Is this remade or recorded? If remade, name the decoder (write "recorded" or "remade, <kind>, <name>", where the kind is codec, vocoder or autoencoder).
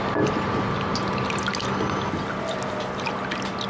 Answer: recorded